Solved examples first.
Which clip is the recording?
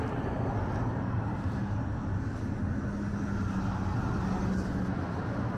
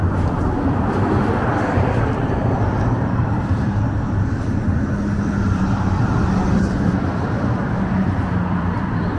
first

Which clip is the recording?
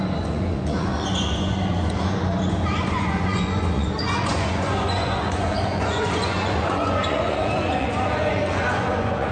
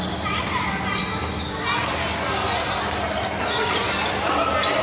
second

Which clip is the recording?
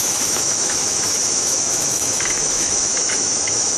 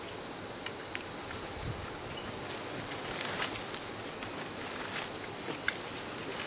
second